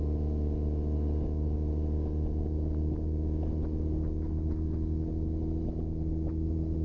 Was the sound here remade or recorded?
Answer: recorded